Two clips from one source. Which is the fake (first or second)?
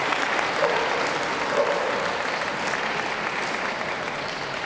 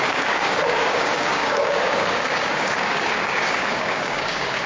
second